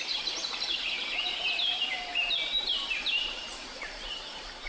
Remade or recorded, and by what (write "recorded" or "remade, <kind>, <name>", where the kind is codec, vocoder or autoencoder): remade, vocoder, BigVGAN v2